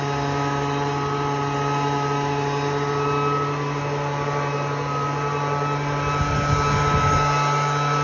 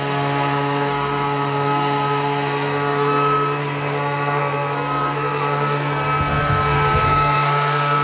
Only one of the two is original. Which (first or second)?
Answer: first